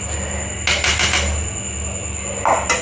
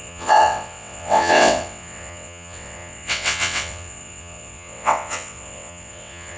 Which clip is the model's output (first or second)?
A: second